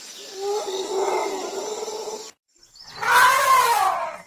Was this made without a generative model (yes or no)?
yes